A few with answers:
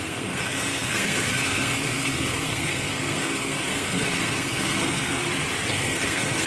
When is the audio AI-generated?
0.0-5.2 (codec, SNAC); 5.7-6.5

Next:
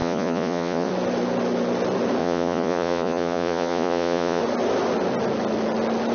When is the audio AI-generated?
0.0-0.9 (vocoder, Vocos); 2.2-4.4

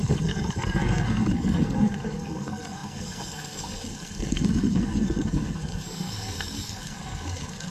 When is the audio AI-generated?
0.0-7.7 (codec, SNAC)

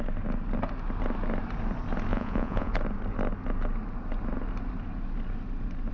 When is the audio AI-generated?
2.1-2.7 (vocoder, Vocos)

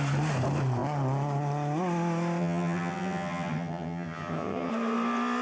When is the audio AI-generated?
2.4-4.7 (vocoder, HiFi-GAN)

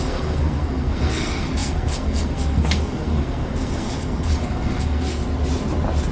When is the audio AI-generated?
0.0-5.2 (codec, SNAC)

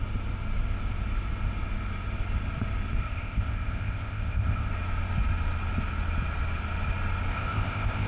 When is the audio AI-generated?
3.0-4.7 (codec, ZipCodec); 7.3-8.1